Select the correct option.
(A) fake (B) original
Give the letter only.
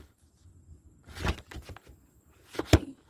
B